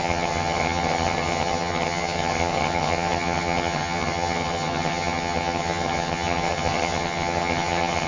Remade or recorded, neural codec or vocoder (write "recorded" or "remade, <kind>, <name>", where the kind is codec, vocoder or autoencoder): remade, vocoder, HiFi-GAN